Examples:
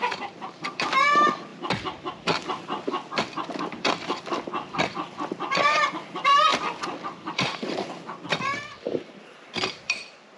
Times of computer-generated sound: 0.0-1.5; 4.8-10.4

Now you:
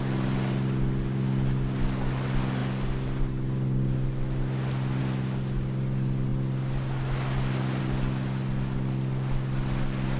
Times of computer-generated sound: none

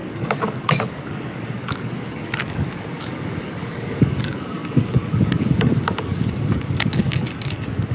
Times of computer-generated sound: 0.0-7.9

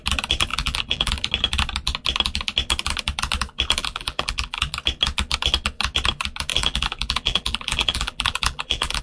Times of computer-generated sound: 0.5-1.1; 3.8-4.6; 6.5-9.0

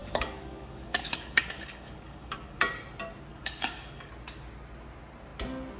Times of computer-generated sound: 0.0-2.6; 3.3-4.1